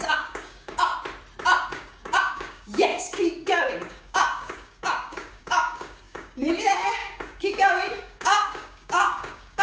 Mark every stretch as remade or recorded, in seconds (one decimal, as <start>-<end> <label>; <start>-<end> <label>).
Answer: 0.0-0.9 remade; 0.9-1.7 recorded; 1.7-9.6 remade